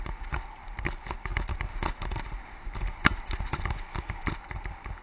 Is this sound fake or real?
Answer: real